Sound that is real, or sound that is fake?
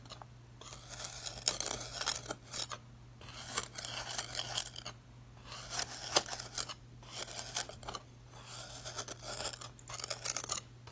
real